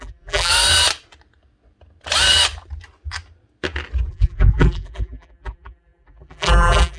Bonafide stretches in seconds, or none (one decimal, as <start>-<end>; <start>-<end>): 0.5-4.1